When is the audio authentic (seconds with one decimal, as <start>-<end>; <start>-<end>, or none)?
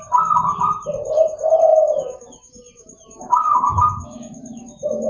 0.0-1.7